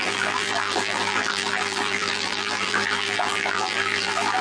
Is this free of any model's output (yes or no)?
no